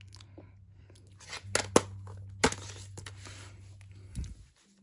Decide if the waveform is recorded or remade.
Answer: recorded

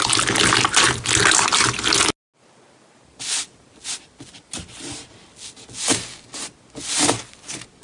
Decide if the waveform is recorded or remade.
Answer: recorded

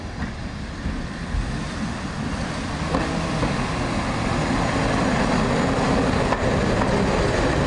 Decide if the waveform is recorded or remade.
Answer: recorded